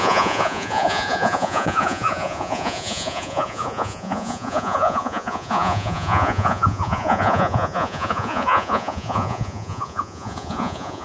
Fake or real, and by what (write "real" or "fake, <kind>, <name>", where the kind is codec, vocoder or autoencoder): fake, vocoder, Vocos